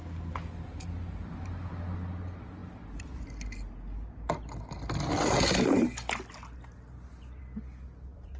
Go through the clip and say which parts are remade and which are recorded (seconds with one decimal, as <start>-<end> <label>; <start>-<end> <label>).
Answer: 0.0-8.4 recorded